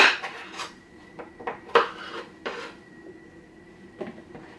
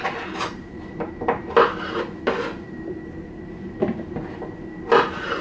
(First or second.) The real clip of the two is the second